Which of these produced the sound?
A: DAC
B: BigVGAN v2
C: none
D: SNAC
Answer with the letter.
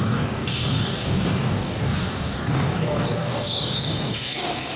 A